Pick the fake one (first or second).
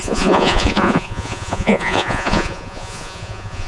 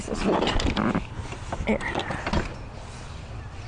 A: first